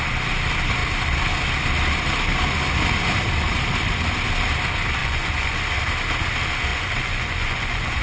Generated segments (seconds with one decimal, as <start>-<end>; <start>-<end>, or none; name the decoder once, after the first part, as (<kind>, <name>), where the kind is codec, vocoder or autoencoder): 5.0-5.6 (vocoder, Vocos); 6.7-8.0